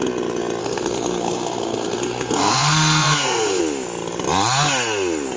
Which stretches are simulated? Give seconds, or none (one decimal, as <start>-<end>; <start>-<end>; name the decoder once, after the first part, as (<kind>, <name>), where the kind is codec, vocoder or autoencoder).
0.6-3.6 (codec, SNAC)

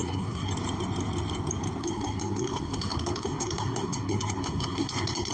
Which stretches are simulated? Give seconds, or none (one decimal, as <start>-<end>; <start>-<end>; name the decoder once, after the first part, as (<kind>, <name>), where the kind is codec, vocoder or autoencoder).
0.0-0.5 (codec, SNAC); 1.8-5.3

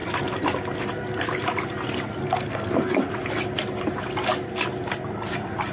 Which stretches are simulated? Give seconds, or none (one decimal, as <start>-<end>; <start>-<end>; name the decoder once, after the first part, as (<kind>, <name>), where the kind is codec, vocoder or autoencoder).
2.2-3.1 (codec, SNAC)

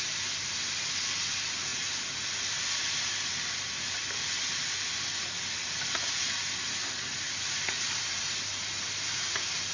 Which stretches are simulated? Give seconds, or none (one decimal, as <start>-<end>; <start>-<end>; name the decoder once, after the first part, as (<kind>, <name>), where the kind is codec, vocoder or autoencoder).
none

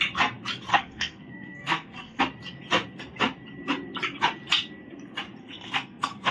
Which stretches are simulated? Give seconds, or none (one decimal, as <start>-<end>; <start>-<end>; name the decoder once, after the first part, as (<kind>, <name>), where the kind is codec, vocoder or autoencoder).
0.7-2.2 (codec, SNAC); 5.4-6.3